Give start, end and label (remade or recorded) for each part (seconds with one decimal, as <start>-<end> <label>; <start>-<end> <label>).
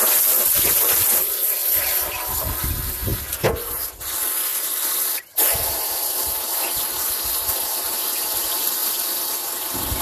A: 0.0-10.0 recorded